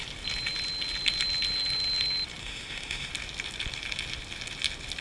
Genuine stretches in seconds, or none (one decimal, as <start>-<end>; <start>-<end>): 0.0-2.4; 3.1-5.0